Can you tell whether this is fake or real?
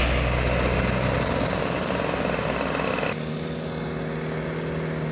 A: real